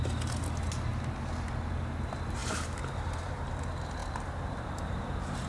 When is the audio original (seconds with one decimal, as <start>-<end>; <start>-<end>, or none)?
0.0-2.4; 3.5-4.0; 4.9-5.5